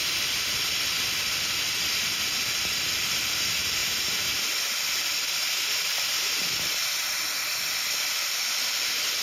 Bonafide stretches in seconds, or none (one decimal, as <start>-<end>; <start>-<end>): 0.0-3.8; 4.4-9.2